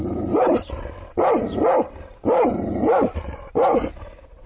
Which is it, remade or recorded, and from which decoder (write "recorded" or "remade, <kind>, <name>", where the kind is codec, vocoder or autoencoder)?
remade, vocoder, BigVGAN v2